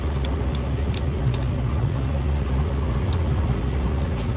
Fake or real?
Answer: fake